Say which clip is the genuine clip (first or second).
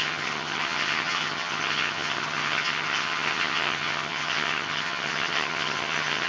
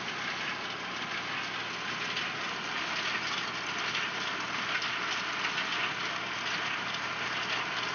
second